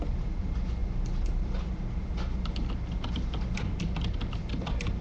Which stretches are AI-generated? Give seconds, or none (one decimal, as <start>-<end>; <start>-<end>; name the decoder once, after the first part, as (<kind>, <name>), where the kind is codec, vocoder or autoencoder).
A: none